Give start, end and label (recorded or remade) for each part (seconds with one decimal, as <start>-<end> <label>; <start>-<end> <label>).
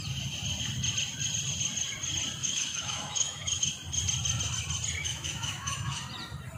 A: 0.0-2.4 recorded; 2.4-3.7 remade; 3.7-5.0 recorded; 5.0-6.0 remade; 6.0-6.6 recorded